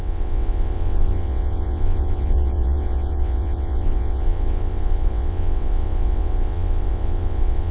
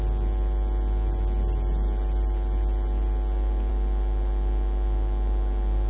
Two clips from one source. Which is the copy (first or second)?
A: first